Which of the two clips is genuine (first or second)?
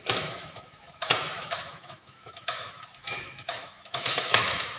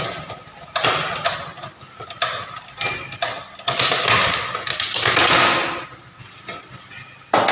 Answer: second